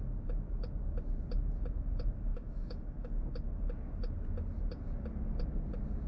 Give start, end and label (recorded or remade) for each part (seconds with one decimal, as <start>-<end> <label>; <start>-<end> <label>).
0.0-2.3 recorded; 2.3-3.1 remade; 3.1-6.1 recorded